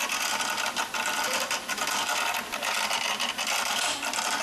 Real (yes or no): yes